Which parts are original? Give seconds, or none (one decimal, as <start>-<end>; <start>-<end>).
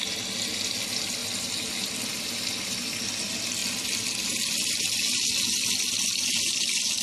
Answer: 0.0-7.0